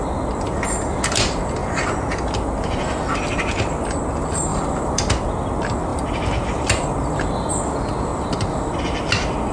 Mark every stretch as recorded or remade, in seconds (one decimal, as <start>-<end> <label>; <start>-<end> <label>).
0.0-1.6 recorded; 1.6-3.0 remade; 3.0-4.5 recorded; 4.5-5.1 remade; 5.1-5.9 recorded; 5.9-7.5 remade; 7.5-8.1 recorded; 8.1-8.8 remade; 8.8-9.5 recorded